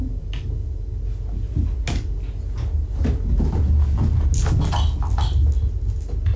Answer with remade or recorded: recorded